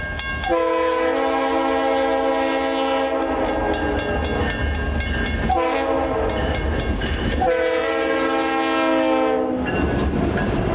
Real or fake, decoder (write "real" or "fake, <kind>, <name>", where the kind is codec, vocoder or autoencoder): real